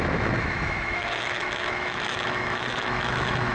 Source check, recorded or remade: remade